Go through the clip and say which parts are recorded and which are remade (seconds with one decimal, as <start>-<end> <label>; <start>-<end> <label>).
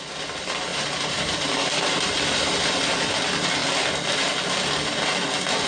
0.0-0.7 recorded; 0.7-3.1 remade; 3.1-5.7 recorded